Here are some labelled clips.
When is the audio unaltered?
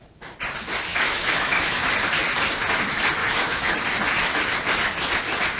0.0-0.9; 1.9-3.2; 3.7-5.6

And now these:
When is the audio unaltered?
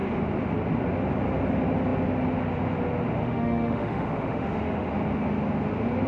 0.0-3.2; 4.9-6.1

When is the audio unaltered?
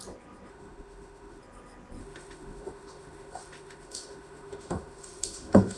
0.0-0.5; 1.4-2.0